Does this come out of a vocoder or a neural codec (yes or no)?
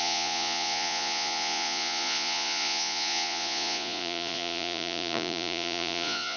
yes